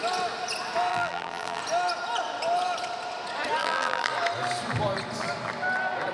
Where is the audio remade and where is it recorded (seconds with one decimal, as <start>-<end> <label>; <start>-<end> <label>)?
0.0-0.9 recorded; 0.9-1.6 remade; 1.6-3.6 recorded; 3.6-4.1 remade; 4.1-6.1 recorded